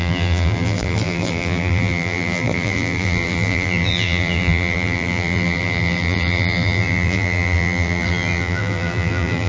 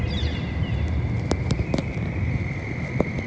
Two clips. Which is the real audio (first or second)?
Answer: second